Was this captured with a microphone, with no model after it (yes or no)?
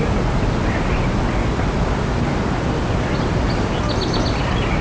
yes